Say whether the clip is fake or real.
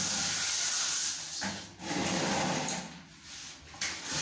real